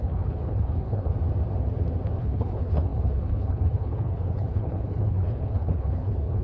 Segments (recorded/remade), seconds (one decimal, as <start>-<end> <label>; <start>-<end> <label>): 0.0-1.1 remade; 1.1-2.2 recorded; 2.2-6.4 remade